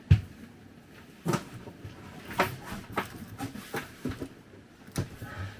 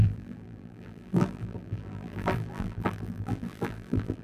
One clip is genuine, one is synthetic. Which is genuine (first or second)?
first